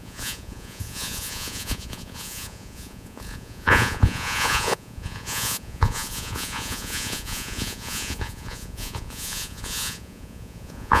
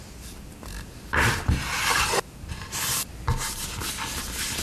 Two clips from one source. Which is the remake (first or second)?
first